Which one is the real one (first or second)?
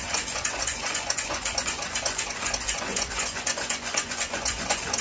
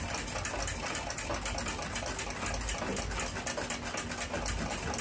second